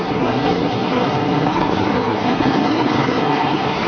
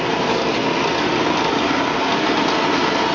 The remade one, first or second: first